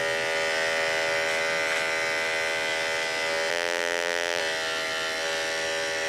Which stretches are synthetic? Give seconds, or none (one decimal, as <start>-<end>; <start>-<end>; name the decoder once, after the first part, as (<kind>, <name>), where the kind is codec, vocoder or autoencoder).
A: 3.5-4.4 (vocoder, BigVGAN v2)